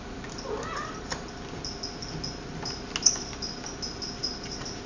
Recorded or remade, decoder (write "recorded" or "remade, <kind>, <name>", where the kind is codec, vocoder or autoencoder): recorded